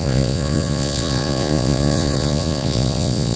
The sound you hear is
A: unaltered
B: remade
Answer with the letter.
B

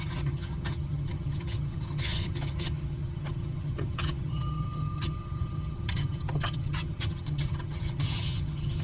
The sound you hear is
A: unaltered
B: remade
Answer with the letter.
B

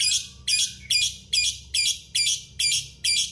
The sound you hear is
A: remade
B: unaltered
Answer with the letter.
B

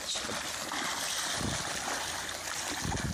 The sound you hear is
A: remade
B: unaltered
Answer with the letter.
B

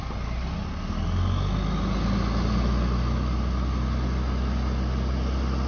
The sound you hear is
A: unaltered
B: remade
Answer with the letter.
A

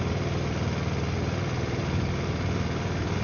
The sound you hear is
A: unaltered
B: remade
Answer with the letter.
A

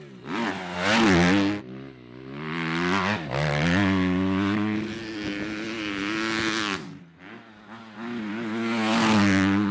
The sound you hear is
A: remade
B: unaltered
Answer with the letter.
B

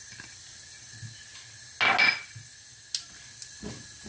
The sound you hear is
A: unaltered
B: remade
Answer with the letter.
A